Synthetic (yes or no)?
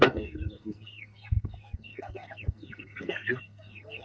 yes